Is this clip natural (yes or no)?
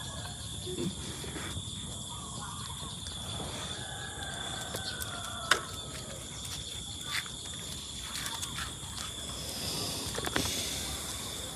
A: yes